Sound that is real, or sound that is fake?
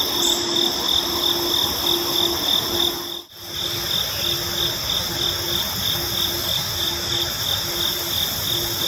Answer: real